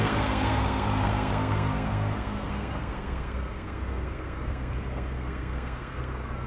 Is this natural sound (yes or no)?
no